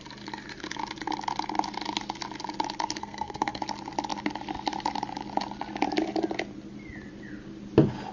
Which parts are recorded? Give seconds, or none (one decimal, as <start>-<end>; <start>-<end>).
0.0-3.0; 3.6-8.1